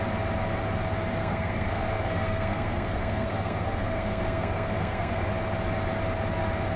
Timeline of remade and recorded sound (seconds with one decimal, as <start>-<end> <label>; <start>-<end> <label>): 0.0-1.2 recorded; 1.2-5.3 remade; 5.3-6.8 recorded